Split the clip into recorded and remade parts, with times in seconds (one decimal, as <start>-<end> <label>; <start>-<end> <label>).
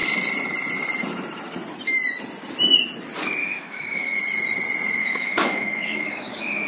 0.0-3.4 recorded; 3.4-4.2 remade; 4.2-5.0 recorded; 5.0-6.7 remade